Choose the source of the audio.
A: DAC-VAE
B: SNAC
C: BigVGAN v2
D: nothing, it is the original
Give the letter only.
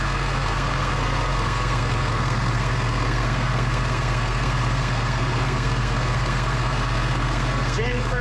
B